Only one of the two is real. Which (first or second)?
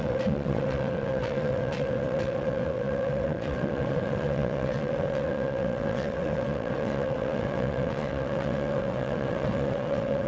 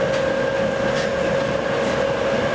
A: second